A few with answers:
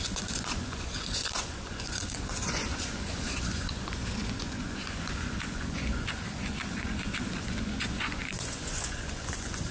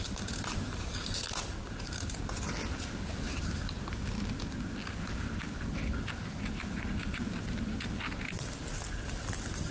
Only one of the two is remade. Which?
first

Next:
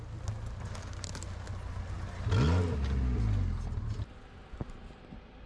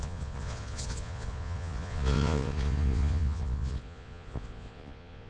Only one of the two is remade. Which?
second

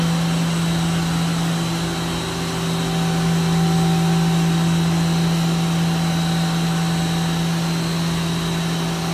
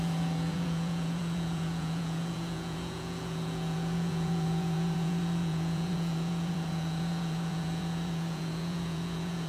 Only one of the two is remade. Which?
second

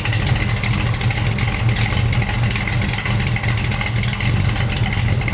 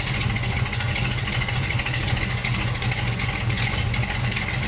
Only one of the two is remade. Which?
second